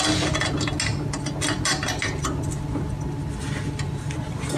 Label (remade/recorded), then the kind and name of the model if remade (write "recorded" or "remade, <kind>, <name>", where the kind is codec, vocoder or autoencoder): recorded